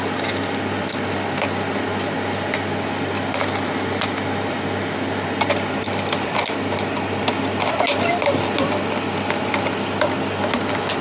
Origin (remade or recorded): recorded